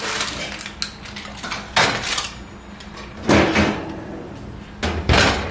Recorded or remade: recorded